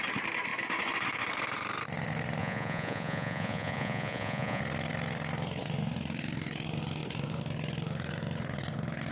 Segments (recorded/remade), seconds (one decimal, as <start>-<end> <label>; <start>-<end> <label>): 0.0-2.4 recorded; 2.4-4.6 remade; 4.6-9.1 recorded